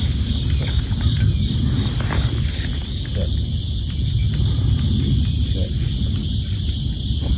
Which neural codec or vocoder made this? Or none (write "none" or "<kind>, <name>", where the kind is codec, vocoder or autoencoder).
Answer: none